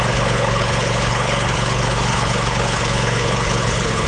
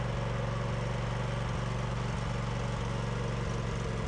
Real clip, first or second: second